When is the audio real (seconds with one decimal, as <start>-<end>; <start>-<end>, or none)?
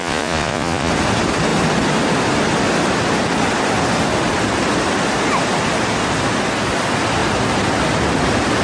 0.9-8.6